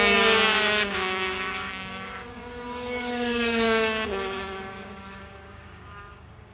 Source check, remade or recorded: remade